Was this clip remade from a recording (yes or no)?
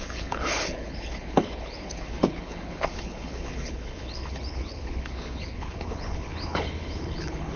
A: yes